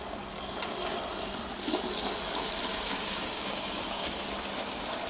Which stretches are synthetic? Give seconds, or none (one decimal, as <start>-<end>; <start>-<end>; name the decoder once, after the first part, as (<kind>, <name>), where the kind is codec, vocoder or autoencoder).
2.7-4.1 (codec, DAC)

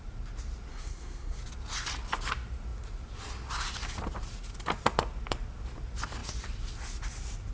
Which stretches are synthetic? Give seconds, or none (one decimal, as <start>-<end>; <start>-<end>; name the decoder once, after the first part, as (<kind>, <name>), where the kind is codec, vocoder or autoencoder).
0.7-1.4 (codec, SNAC)

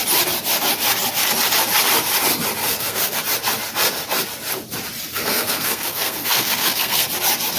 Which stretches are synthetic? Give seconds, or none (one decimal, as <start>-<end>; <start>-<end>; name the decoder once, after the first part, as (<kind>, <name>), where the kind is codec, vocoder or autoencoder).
2.6-3.2 (codec, SNAC); 5.1-7.1

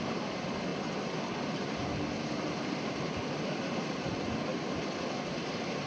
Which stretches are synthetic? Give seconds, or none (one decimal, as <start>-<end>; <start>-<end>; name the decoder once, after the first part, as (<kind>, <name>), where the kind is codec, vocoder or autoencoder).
0.0-0.7 (vocoder, BigVGAN v2); 1.4-4.5; 5.5-5.9

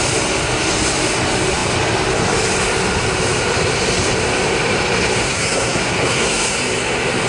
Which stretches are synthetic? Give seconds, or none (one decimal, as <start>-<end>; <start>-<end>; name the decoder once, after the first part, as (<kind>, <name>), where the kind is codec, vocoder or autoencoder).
5.2-6.6 (codec, SNAC)

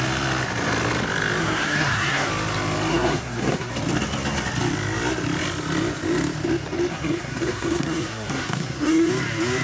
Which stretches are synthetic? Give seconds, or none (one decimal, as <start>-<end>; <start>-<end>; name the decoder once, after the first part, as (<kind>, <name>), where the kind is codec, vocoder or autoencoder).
1.4-2.3 (codec, SNAC); 2.9-3.7; 6.9-9.1

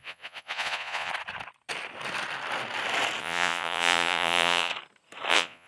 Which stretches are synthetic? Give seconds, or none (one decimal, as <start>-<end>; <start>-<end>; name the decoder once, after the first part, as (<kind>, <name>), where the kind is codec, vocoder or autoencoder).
0.0-1.1 (vocoder, Vocos); 3.2-4.7; 5.3-5.7

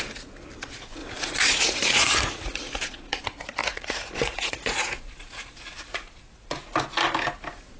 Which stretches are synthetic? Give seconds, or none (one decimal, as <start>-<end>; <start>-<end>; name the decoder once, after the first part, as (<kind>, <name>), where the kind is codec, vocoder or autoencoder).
1.0-3.2 (vocoder, Vocos); 3.6-6.8